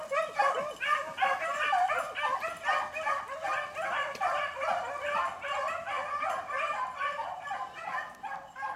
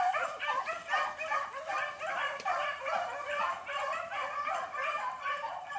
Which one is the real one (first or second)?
first